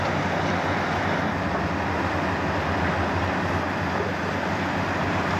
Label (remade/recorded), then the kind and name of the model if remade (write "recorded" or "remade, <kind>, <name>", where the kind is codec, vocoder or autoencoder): recorded